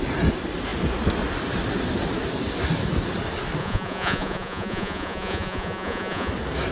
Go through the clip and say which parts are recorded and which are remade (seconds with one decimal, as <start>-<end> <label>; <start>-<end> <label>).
0.0-3.6 recorded; 3.6-6.3 remade; 6.3-6.7 recorded